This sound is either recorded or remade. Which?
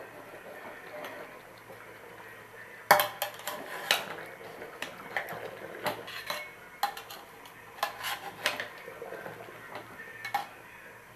recorded